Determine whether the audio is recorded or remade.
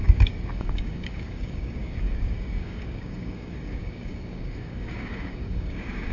remade